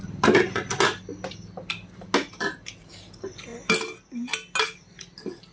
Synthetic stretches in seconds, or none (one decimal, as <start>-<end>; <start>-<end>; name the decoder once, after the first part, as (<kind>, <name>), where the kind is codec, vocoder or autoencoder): none